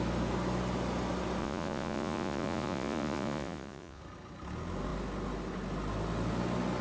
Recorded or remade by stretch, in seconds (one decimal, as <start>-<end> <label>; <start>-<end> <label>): 0.0-1.4 recorded; 1.4-4.0 remade; 4.0-6.8 recorded